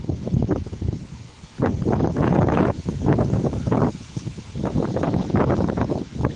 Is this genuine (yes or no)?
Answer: no